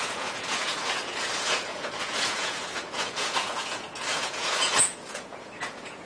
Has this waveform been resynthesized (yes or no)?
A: yes